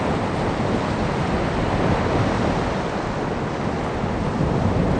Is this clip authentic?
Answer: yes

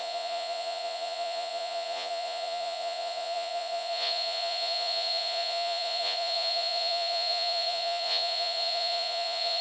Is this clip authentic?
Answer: no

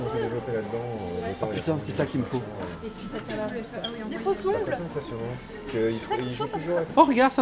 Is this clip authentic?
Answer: yes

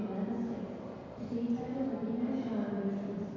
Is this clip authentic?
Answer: yes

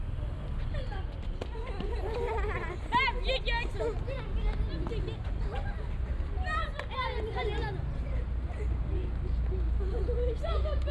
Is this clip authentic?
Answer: yes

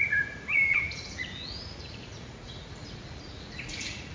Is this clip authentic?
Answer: no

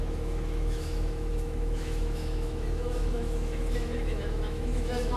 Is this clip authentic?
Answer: no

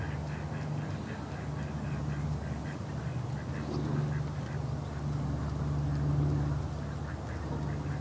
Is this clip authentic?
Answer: yes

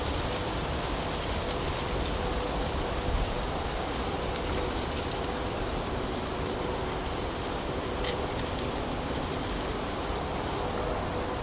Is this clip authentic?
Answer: no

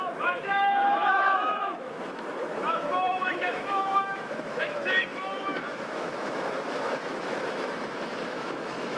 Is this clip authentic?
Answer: no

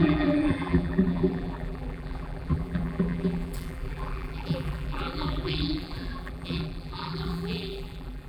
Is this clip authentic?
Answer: no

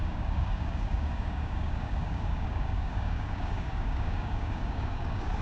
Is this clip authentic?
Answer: no